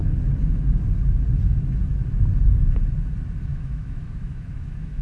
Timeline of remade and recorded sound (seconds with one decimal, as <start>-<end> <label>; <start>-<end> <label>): 0.0-3.5 recorded; 3.5-5.0 remade